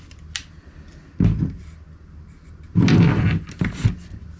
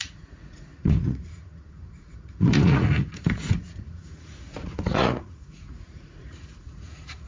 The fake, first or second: second